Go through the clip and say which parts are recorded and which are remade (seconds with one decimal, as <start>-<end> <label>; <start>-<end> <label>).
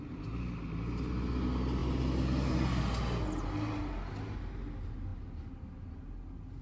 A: 0.0-6.6 recorded